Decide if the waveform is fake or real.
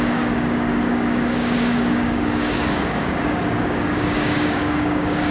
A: fake